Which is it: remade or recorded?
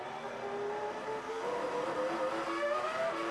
recorded